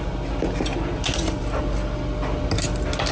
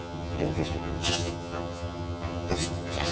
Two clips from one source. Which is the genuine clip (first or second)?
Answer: first